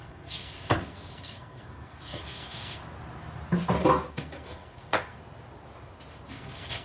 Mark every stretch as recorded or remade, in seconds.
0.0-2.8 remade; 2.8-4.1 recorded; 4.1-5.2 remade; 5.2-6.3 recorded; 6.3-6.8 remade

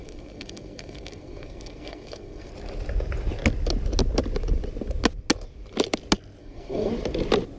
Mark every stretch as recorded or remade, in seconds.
0.0-2.5 remade; 2.5-6.4 recorded; 6.4-6.9 remade; 6.9-7.6 recorded

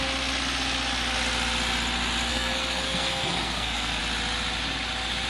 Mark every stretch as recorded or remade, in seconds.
0.0-2.3 recorded; 2.3-4.0 remade; 4.0-5.3 recorded